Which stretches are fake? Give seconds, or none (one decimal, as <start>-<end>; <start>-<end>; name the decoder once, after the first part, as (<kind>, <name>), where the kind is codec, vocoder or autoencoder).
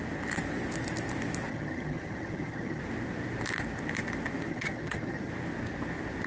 1.5-2.8 (vocoder, HiFi-GAN); 4.5-5.3